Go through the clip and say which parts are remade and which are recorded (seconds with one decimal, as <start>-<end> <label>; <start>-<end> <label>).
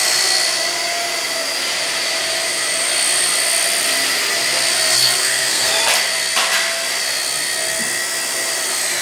0.0-5.2 recorded; 5.2-5.7 remade; 5.7-9.0 recorded